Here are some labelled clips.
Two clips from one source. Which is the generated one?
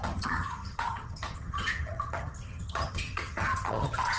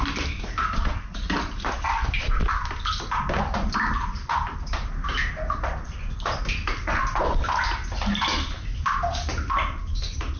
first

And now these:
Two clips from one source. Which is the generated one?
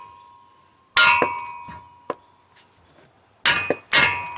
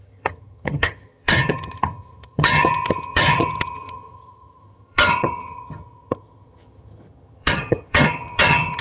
second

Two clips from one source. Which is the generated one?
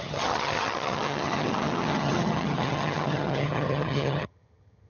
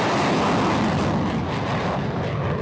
first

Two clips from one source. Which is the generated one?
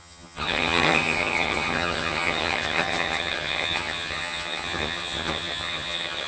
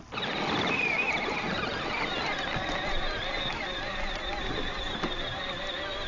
first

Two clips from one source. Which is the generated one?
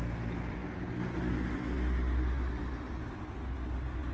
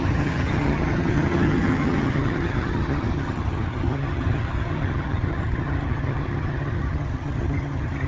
second